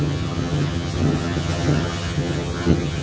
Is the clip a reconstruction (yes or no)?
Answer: yes